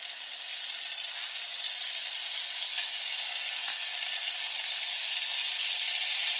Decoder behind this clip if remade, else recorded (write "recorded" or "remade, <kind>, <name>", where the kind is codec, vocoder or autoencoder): recorded